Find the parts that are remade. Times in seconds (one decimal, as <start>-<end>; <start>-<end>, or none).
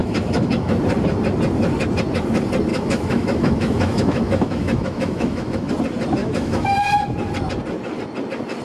0.0-0.7; 2.7-5.7; 6.2-6.8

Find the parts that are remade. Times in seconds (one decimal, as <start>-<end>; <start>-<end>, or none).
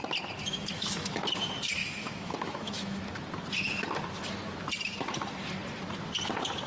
0.5-1.2; 1.8-3.0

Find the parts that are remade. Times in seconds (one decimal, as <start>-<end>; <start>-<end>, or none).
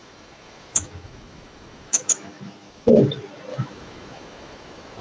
0.0-3.0; 3.5-5.0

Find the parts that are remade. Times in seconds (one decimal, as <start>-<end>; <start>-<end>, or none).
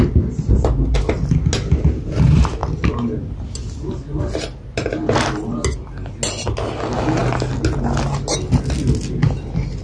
none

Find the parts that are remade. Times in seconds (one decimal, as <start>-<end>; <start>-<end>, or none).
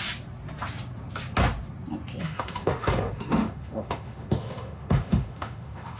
2.2-6.0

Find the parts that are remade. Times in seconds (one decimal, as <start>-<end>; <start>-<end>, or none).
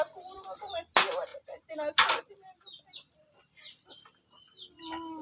none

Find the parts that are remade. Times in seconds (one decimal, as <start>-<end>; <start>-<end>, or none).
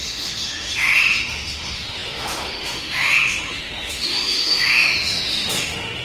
0.0-6.0